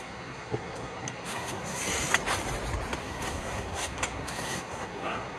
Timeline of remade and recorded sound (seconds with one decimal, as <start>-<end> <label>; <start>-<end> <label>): 0.0-1.8 remade; 1.8-3.0 recorded; 3.0-5.4 remade